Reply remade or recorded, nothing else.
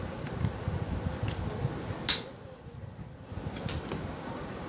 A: recorded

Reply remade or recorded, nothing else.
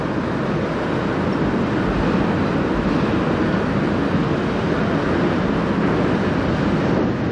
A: recorded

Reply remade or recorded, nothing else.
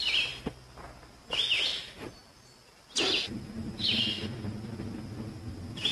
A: recorded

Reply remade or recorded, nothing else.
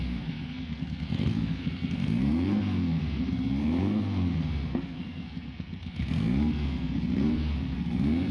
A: remade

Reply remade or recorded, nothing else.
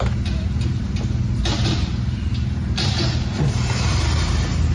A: recorded